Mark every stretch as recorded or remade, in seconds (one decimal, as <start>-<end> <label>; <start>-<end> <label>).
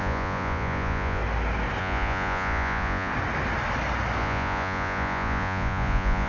0.0-1.2 remade; 1.2-1.8 recorded; 1.8-3.1 remade; 3.1-4.2 recorded; 4.2-6.3 remade